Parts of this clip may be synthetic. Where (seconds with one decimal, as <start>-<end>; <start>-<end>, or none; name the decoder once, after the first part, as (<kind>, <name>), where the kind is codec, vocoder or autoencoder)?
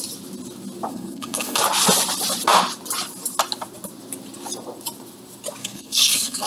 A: 0.9-1.6 (codec, SNAC); 5.6-6.5